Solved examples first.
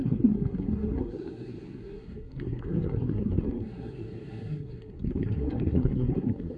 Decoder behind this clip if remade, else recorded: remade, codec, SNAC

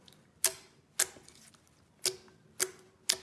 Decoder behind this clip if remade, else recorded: recorded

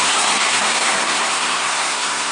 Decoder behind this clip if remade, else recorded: remade, codec, SNAC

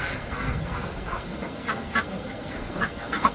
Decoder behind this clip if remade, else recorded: remade, codec, SNAC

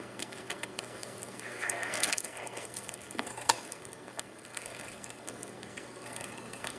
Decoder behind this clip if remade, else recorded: remade, codec, SNAC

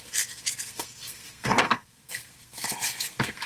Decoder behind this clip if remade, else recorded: remade, codec, SNAC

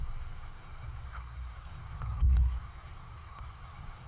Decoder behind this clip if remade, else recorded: remade, codec, SNAC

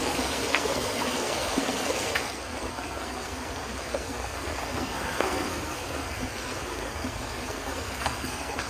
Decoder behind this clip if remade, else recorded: remade, codec, SNAC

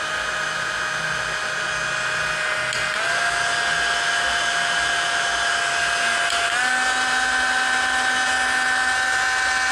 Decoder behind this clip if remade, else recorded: recorded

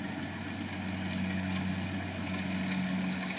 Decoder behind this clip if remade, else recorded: recorded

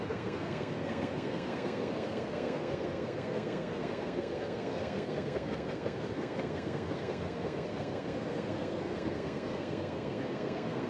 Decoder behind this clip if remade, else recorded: remade, codec, SNAC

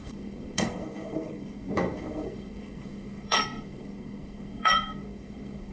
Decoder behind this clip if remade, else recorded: remade, codec, SNAC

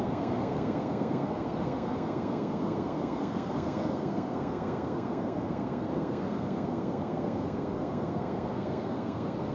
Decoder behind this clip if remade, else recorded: remade, codec, SNAC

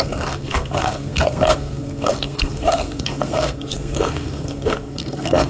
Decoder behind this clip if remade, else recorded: remade, codec, SNAC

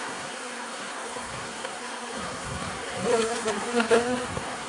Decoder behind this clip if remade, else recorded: remade, codec, SNAC